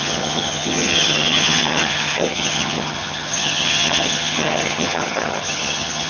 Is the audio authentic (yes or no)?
no